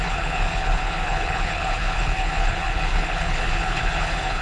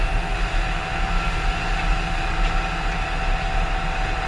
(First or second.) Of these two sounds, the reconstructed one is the first